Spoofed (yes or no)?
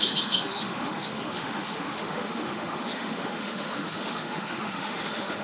yes